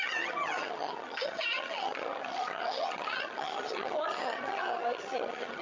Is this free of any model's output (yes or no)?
no